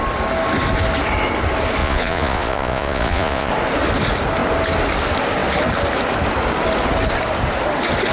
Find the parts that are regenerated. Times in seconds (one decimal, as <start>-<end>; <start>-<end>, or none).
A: 1.8-3.5